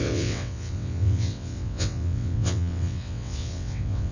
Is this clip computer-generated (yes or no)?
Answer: yes